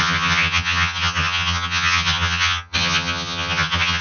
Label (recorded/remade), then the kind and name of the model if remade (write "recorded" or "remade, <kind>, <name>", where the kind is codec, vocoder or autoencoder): remade, vocoder, HiFi-GAN